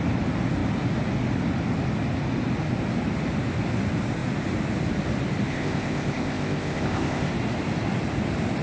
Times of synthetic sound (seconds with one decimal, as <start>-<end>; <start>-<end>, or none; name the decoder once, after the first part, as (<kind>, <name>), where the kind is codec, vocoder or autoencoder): 5.5-7.3 (codec, ZipCodec)